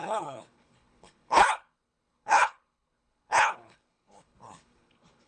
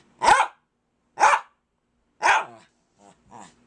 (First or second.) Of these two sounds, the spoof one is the first